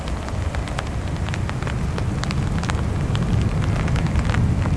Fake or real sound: real